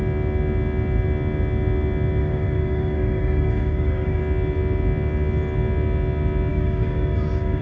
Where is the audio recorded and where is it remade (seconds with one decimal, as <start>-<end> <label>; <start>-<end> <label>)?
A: 0.0-2.2 recorded; 2.2-4.2 remade; 4.2-6.5 recorded; 6.5-7.6 remade

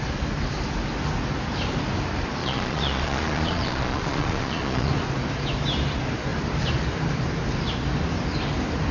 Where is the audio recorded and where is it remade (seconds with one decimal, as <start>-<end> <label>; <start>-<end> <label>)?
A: 0.0-2.4 recorded; 2.4-4.9 remade; 4.9-8.9 recorded

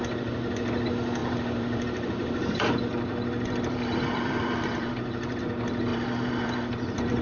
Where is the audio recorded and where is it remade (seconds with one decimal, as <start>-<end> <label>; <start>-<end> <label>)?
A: 0.0-1.2 recorded; 1.2-5.4 remade; 5.4-5.9 recorded; 5.9-7.2 remade

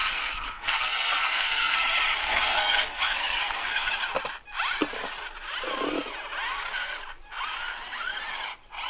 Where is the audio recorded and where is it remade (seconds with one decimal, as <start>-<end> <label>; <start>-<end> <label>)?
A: 0.0-1.8 remade; 1.8-2.2 recorded; 2.2-3.9 remade; 3.9-8.9 recorded

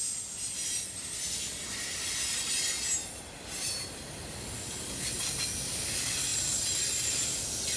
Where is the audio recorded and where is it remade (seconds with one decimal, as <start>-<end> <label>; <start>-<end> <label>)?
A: 0.0-7.8 recorded

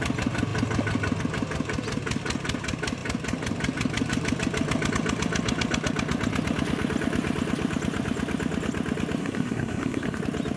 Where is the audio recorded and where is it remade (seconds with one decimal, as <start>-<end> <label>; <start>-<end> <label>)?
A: 0.0-9.2 recorded; 9.2-10.2 remade; 10.2-10.6 recorded